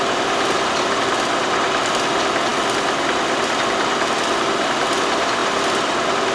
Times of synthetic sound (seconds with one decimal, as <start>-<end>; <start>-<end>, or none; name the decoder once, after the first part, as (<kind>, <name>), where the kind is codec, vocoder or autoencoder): none